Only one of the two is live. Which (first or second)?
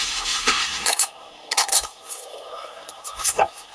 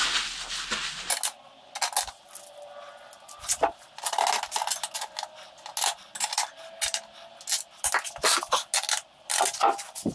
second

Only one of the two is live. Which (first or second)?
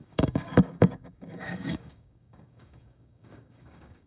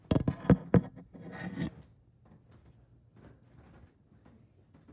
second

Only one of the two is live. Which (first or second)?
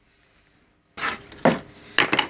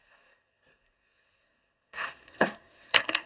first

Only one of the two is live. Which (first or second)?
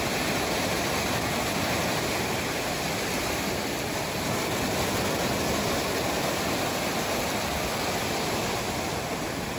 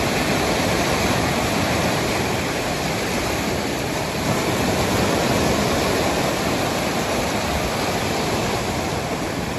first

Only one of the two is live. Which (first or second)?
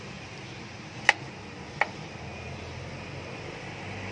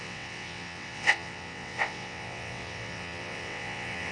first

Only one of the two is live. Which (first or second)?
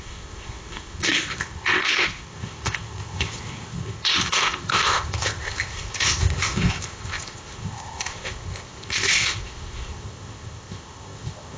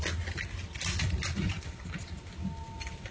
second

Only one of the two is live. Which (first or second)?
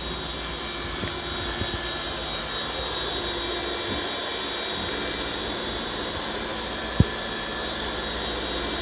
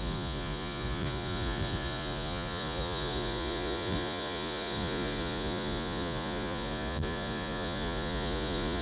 first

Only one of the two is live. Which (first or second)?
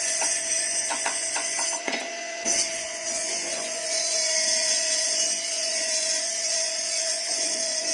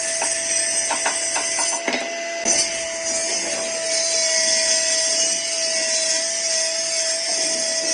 second